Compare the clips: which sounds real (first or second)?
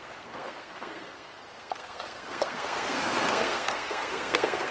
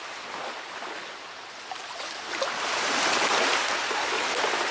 second